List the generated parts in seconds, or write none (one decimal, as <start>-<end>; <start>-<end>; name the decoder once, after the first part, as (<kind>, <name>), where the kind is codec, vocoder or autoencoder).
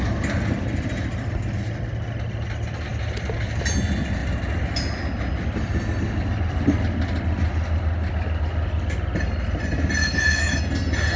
10.0-10.6 (autoencoder, DAC-VAE)